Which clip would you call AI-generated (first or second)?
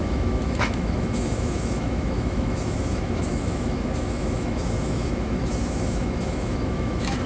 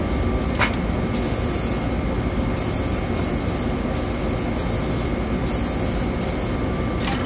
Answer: first